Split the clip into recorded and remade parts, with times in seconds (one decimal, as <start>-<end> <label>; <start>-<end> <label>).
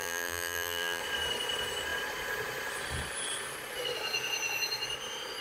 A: 0.0-1.0 remade; 1.0-5.4 recorded